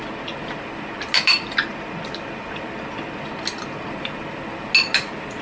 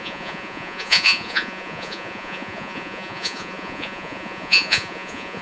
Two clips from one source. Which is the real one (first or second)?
first